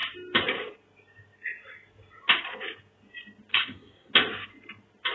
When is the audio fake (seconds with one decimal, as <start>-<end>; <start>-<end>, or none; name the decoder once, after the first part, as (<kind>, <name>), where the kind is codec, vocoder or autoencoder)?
3.5-4.1 (codec, SNAC)